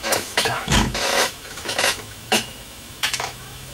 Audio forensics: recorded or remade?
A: remade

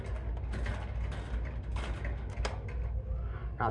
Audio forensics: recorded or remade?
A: recorded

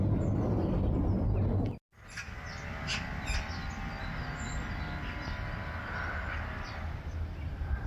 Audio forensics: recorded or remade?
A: recorded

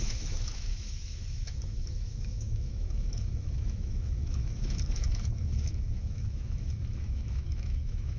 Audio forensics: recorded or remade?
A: remade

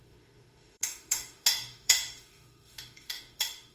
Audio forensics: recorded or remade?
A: remade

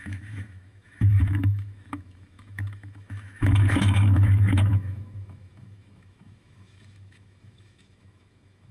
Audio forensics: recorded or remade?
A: remade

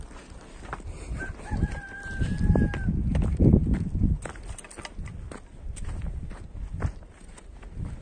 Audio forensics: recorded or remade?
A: recorded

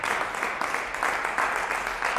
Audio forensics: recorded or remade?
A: recorded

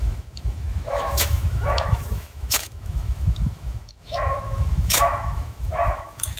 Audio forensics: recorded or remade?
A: remade